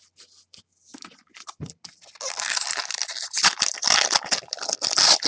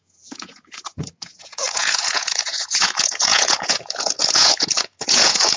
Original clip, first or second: first